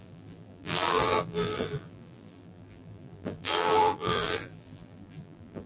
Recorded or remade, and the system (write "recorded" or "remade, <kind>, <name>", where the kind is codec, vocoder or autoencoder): remade, vocoder, BigVGAN v2